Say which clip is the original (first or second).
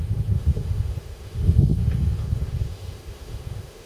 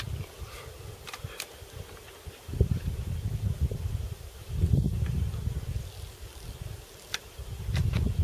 second